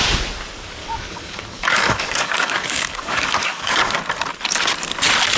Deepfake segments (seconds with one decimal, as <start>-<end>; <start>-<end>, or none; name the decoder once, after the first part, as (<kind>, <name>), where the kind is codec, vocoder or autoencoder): 0.8-4.0 (codec, DAC)